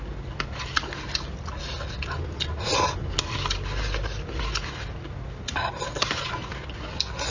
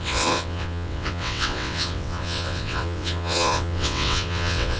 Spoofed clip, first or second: second